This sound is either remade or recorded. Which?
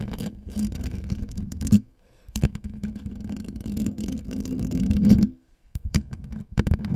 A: remade